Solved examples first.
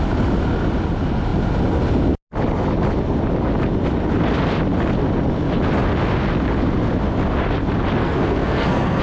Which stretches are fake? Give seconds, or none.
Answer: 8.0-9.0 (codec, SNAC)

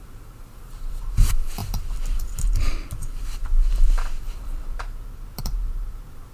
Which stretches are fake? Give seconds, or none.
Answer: 0.0-6.3 (vocoder, BigVGAN v2)

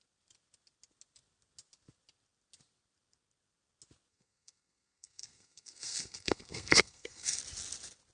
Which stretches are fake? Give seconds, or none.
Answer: 4.1-7.4 (codec, SNAC)